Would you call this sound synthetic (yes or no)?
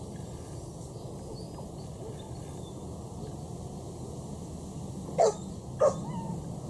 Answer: no